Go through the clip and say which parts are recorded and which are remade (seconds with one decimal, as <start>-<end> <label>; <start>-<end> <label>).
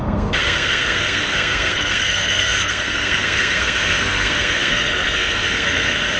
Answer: 0.0-6.2 remade